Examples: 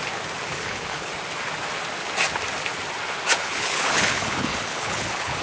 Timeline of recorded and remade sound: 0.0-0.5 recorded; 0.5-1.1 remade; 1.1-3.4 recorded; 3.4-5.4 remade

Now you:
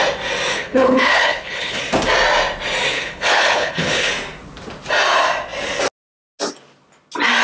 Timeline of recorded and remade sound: 0.0-0.5 recorded; 0.5-1.8 remade; 1.8-2.9 recorded; 2.9-4.1 remade; 4.1-7.4 recorded